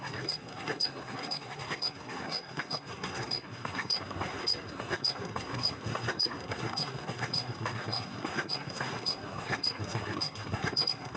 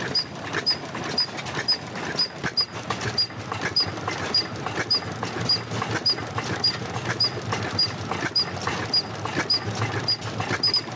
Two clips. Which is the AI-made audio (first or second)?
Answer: first